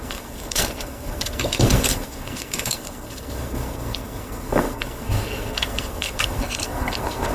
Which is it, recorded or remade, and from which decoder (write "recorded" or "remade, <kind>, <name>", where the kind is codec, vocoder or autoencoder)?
remade, codec, SNAC